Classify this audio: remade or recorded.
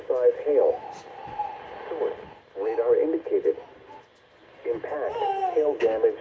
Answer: recorded